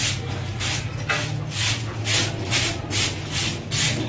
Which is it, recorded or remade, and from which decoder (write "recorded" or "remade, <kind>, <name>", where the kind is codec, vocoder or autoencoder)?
recorded